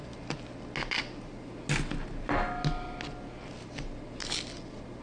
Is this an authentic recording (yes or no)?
yes